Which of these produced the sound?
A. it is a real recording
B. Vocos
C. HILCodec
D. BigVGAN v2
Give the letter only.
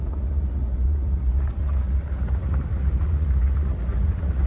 B